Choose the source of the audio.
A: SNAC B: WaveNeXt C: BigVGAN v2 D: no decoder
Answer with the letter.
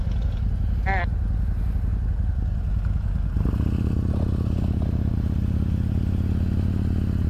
D